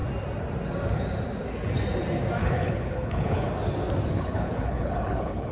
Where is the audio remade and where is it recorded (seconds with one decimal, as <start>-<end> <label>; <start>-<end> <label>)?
0.0-2.4 recorded; 2.4-3.5 remade; 3.5-4.1 recorded; 4.1-5.5 remade